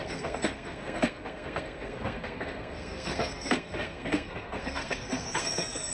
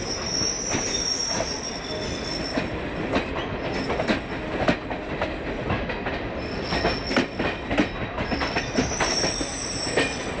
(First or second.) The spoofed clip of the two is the first